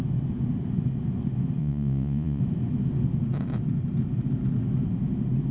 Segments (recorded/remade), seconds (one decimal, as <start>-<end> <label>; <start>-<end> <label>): 0.0-1.6 recorded; 1.6-2.4 remade; 2.4-5.5 recorded